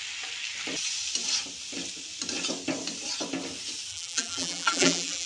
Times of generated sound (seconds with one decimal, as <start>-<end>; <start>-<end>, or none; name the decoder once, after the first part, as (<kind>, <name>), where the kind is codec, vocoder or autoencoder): 3.9-5.3 (vocoder, BigVGAN v2)